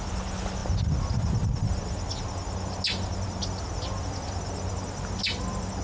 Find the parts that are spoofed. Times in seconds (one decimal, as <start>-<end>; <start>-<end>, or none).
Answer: none